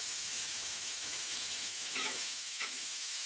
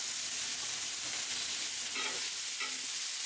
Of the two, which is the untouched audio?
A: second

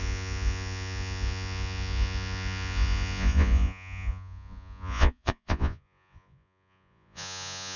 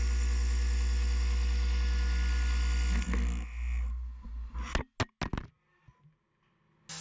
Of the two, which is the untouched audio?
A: second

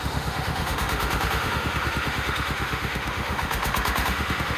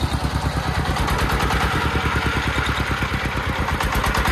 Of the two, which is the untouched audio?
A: second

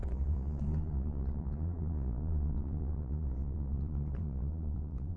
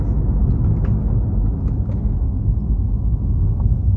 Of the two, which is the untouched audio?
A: second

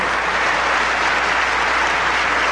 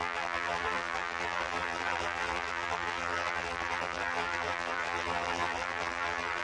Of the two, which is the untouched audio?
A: first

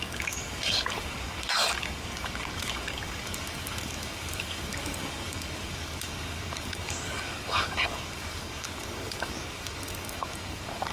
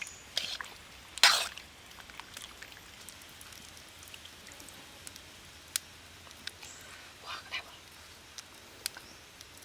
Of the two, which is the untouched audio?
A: second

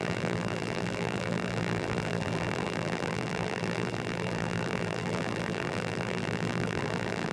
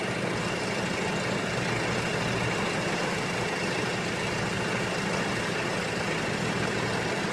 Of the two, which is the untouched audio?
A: second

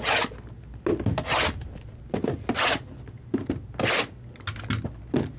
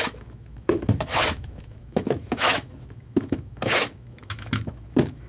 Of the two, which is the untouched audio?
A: first